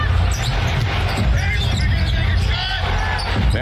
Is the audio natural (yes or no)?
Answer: yes